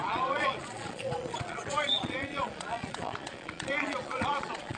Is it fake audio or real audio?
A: fake